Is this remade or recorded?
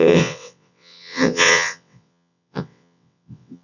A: remade